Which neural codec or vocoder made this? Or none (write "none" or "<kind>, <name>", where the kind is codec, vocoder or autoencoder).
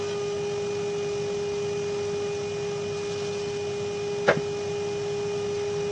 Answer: none